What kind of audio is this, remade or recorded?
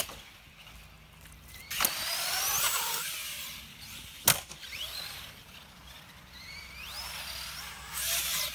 recorded